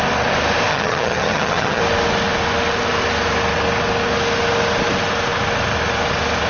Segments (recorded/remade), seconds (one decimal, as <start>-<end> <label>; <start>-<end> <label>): 0.0-0.7 recorded; 0.7-1.8 remade; 1.8-6.5 recorded